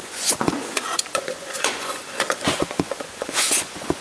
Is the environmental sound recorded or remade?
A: remade